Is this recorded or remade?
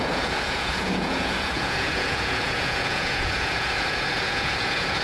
remade